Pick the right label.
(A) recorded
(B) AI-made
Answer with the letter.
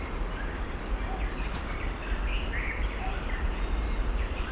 B